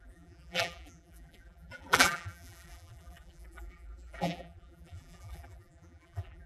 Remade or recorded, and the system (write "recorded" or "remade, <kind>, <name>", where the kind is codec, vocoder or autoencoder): remade, vocoder, BigVGAN v2